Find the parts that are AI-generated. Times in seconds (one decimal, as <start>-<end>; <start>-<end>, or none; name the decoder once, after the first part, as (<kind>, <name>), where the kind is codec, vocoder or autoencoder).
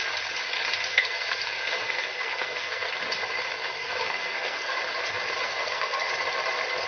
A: 0.9-2.9 (codec, SNAC); 3.8-4.8; 5.4-6.1